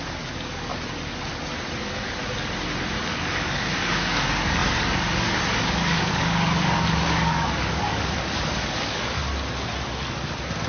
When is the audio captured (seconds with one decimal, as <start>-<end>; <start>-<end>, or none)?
0.7-1.8; 2.2-3.0; 9.3-10.7